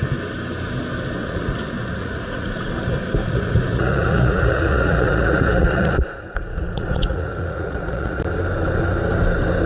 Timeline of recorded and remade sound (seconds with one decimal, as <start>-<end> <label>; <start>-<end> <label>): 0.0-1.2 recorded; 1.2-2.7 remade; 2.7-3.2 recorded; 3.2-8.2 remade; 8.2-9.7 recorded

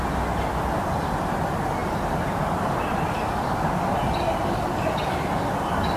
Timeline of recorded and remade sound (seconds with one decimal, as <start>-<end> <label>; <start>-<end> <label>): 0.0-6.0 recorded

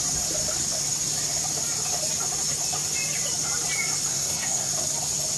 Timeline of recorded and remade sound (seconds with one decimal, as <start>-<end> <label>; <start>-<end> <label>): 0.0-4.1 recorded; 4.1-4.7 remade; 4.7-5.4 recorded

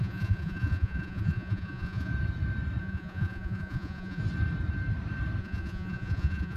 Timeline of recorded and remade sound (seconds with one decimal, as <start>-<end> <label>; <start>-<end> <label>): 0.0-2.1 remade; 2.1-2.8 recorded; 2.8-4.2 remade; 4.2-5.4 recorded; 5.4-6.6 remade

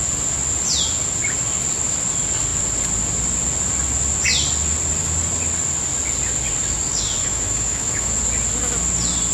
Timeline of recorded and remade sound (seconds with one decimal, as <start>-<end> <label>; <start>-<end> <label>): 0.0-7.2 recorded; 7.2-8.2 remade; 8.2-9.3 recorded

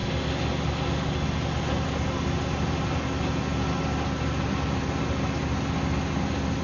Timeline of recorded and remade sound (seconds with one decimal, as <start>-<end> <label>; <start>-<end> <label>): 0.0-6.6 recorded